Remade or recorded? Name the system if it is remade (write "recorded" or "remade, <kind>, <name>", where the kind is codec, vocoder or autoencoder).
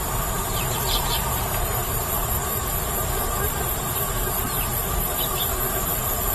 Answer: remade, vocoder, BigVGAN v2